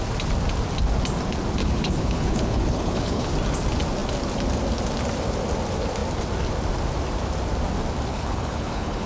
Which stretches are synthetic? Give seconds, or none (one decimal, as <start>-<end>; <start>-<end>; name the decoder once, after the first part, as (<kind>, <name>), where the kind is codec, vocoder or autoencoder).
1.6-3.3 (codec, HILCodec); 8.1-9.1

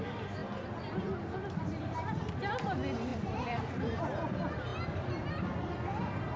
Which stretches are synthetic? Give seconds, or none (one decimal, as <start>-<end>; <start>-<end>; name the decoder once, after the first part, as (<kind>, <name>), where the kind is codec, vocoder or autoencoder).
0.4-2.3 (vocoder, BigVGAN v2); 3.1-4.0